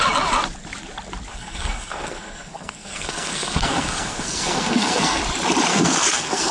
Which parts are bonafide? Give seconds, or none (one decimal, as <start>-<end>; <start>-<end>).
0.0-1.3; 5.2-5.7